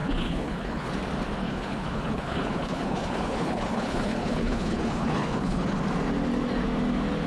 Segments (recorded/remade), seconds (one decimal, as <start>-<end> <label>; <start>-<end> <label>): 0.0-0.9 remade; 0.9-1.4 recorded; 1.4-5.8 remade; 5.8-7.3 recorded